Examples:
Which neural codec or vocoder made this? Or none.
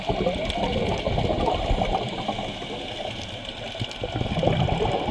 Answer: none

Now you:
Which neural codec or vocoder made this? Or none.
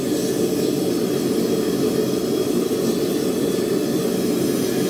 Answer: none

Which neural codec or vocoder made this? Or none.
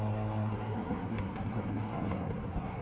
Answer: codec, SNAC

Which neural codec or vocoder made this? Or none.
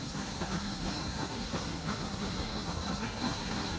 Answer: codec, SNAC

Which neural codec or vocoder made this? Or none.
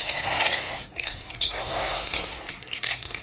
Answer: codec, SNAC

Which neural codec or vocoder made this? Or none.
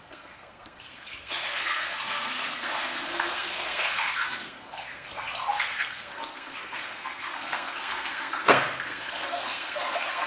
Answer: codec, SNAC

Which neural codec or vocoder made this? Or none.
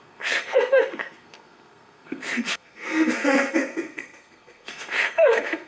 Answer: codec, SNAC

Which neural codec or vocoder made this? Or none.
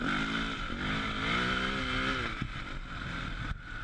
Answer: none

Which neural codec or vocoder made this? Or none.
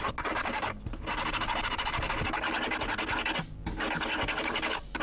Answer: none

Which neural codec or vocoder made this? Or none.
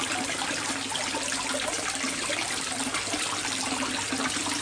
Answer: none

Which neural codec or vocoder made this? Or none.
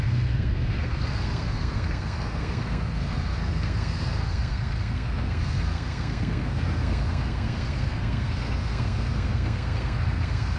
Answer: codec, SNAC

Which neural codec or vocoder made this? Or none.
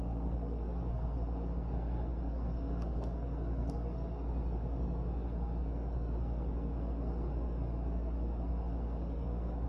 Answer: codec, SNAC